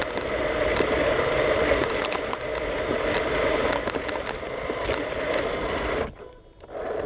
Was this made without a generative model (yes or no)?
yes